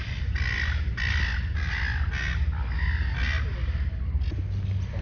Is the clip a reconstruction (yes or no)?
no